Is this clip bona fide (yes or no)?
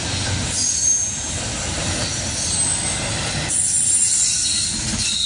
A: yes